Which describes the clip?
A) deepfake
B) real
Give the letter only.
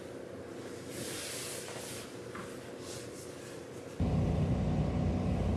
B